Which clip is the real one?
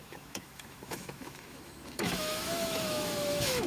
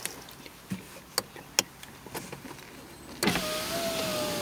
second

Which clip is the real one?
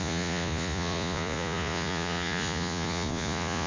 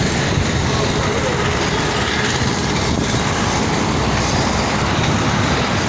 second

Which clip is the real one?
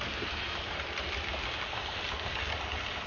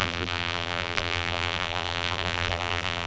first